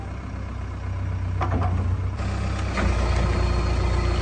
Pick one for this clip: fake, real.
real